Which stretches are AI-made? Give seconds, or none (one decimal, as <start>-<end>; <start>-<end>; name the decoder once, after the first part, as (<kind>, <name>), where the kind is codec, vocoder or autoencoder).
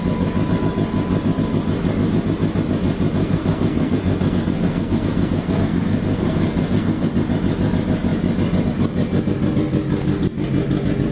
3.2-7.1 (codec, SNAC)